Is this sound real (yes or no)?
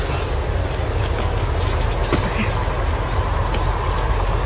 yes